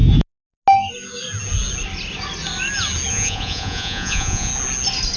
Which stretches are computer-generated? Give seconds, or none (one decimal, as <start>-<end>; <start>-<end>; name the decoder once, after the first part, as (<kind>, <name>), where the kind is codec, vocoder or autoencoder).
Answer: 3.1-4.5 (vocoder, Vocos)